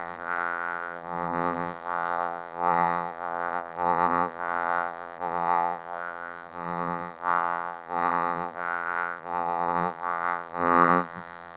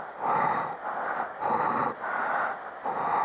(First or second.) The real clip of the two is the second